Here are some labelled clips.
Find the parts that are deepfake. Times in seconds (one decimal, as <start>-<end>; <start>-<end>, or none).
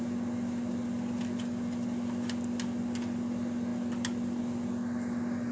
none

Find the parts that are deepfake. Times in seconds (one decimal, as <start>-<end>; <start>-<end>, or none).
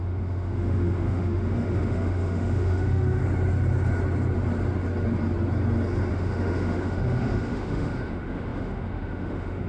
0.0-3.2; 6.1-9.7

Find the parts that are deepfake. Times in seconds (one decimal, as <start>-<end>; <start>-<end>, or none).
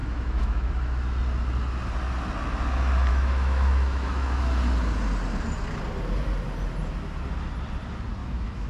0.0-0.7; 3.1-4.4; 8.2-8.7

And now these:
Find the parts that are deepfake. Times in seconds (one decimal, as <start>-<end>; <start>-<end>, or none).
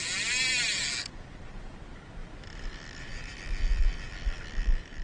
1.0-1.7; 2.2-3.4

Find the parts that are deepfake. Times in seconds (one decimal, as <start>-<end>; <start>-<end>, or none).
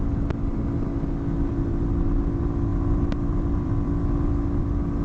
2.7-4.6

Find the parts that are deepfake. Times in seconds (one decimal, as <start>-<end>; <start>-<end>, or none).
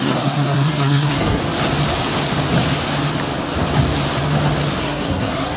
0.0-1.4; 4.8-5.6